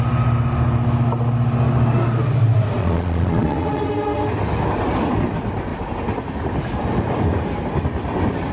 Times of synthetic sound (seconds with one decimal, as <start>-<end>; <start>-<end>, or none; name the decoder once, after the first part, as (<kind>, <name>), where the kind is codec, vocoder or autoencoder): 2.8-3.9 (vocoder, Vocos)